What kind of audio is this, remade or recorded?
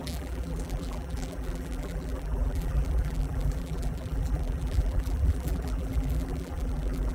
remade